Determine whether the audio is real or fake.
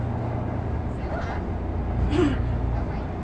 real